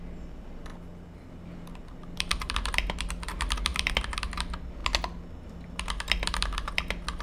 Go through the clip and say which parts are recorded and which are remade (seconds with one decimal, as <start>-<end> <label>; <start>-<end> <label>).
0.0-7.2 recorded